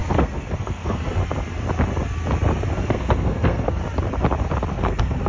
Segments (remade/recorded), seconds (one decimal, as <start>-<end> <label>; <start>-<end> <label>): 0.0-1.2 remade; 1.2-2.7 recorded; 2.7-3.8 remade; 3.8-4.7 recorded; 4.7-5.3 remade